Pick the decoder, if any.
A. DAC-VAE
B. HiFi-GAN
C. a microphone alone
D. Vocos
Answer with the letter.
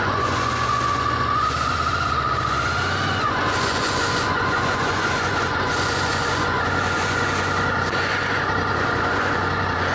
D